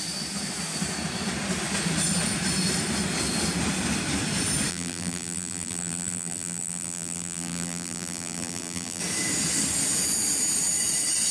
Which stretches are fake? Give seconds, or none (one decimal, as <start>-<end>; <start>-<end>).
4.7-9.0